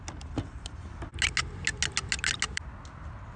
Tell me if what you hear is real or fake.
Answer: real